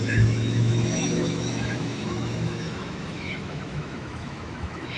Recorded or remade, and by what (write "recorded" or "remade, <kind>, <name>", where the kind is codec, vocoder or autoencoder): remade, autoencoder, DAC-VAE